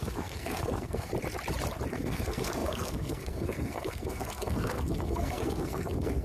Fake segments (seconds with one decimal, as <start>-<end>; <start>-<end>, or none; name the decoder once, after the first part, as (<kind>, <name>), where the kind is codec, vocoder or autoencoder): 0.0-1.1 (codec, SNAC); 1.9-6.2